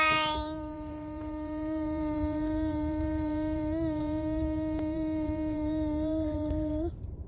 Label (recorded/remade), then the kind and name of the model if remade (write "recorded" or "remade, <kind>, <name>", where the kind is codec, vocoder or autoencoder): remade, vocoder, BigVGAN v2